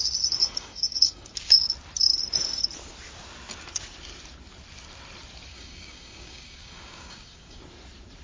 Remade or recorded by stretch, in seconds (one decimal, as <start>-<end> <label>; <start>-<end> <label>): 0.0-0.4 recorded; 0.4-1.3 remade; 1.3-5.5 recorded; 5.5-7.6 remade; 7.6-8.2 recorded